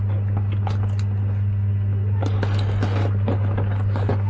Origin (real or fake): real